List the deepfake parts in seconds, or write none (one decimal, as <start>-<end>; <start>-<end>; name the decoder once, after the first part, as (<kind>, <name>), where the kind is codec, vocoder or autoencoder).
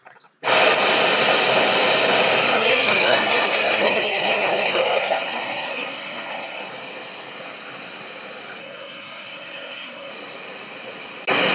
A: 2.5-6.7 (codec, SNAC); 8.6-10.1